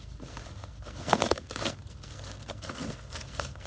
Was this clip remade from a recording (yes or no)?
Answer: yes